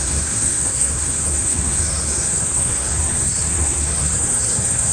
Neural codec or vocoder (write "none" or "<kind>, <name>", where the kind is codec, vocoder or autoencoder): codec, SNAC